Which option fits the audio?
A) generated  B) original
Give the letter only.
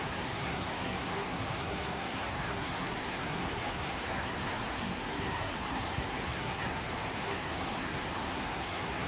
A